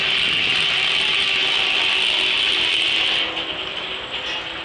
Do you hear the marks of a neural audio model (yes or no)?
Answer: no